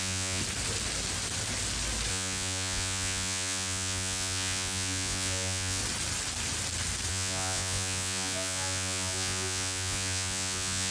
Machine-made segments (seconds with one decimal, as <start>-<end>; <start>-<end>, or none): 0.0-0.4; 2.1-5.8; 7.1-10.9